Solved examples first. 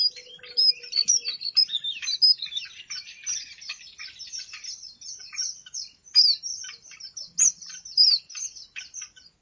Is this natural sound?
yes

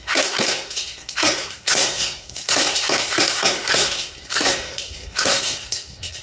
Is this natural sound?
no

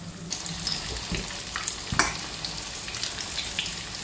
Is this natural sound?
yes